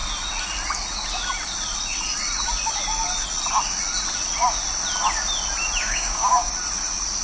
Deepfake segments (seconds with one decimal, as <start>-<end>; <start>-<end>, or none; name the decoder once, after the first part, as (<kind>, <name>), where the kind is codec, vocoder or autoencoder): 5.8-6.5 (codec, DAC)